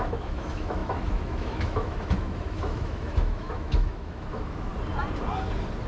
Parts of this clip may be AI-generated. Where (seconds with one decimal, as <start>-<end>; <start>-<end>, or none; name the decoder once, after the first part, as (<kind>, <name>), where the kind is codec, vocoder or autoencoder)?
0.0-4.7 (autoencoder, DAC-VAE)